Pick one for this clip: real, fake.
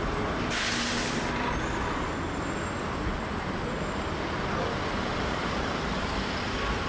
real